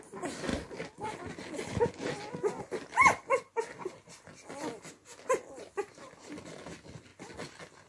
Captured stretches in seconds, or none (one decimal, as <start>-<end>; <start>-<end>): 0.0-7.9